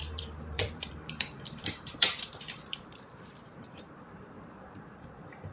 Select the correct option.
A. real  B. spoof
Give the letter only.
B